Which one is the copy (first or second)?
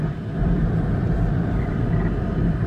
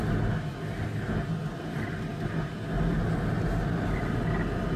first